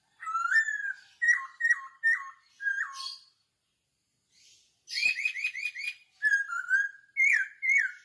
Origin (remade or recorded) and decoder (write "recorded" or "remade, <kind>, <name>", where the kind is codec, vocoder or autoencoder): recorded